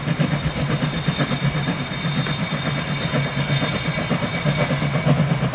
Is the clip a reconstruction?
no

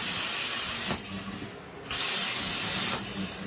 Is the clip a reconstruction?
no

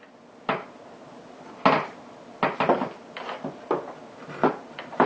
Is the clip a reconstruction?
no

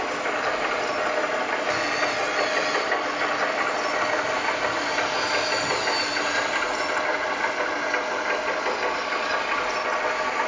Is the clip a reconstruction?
no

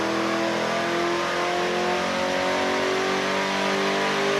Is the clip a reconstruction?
no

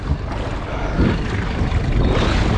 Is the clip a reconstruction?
no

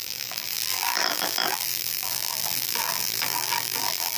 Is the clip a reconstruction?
yes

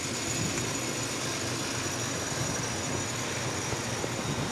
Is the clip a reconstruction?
no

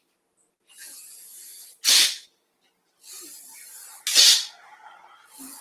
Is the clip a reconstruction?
no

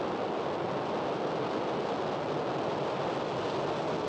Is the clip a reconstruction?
no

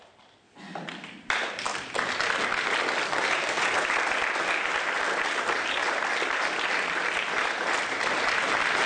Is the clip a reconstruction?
no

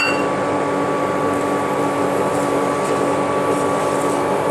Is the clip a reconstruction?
no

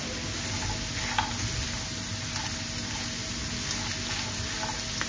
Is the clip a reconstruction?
no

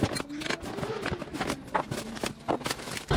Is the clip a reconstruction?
no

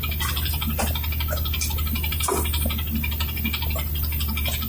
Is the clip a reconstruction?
no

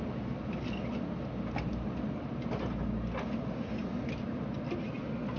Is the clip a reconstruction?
no